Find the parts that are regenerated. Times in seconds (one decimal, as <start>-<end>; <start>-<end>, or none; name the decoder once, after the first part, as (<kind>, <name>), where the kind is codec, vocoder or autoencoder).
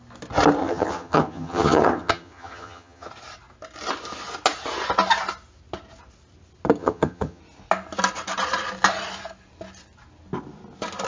0.6-3.1 (vocoder, HiFi-GAN); 6.8-7.4